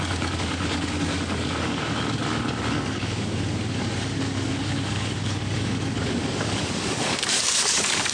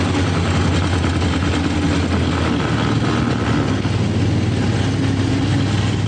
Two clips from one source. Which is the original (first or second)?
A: second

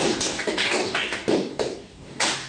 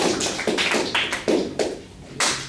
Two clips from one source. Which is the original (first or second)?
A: second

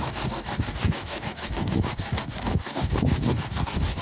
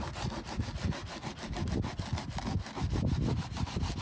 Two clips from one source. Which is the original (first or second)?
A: second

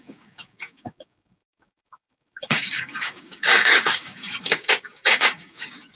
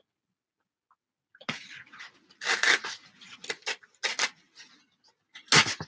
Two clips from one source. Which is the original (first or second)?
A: second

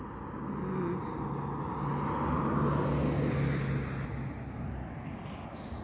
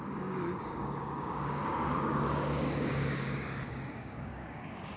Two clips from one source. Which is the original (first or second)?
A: first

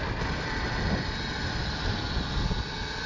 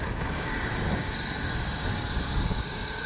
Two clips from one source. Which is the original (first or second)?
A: first